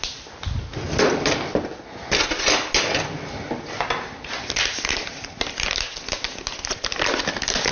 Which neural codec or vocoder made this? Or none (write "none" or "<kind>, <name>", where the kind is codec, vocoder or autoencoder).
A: none